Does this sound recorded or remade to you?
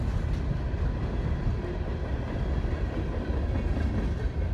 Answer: recorded